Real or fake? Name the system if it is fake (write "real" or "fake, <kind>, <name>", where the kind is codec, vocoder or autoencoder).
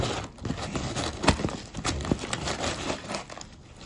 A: real